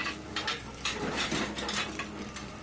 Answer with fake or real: real